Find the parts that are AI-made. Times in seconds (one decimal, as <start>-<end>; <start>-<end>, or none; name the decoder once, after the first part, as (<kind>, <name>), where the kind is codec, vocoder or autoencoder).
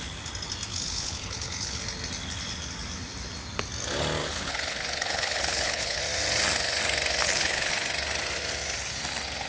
0.7-1.8 (codec, HILCodec); 4.2-6.0; 7.2-7.7